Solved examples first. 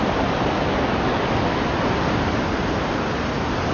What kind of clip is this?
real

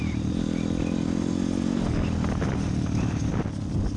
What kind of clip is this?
real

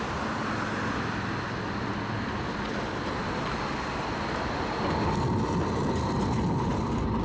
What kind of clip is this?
real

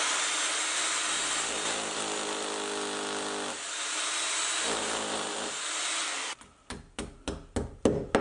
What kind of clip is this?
real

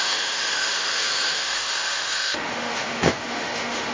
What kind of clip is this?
fake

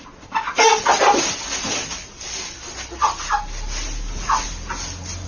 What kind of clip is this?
real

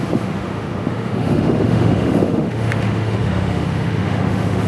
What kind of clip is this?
fake